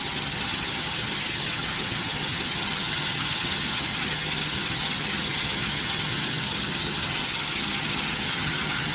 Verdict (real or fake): fake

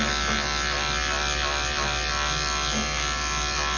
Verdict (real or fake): real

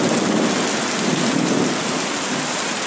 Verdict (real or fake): real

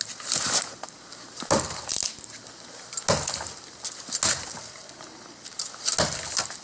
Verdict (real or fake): real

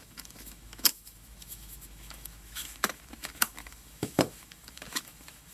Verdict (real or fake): fake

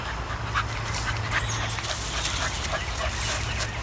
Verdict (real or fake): real